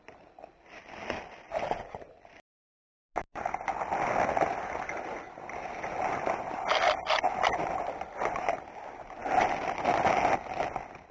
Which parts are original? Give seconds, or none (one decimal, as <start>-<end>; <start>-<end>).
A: 0.0-11.1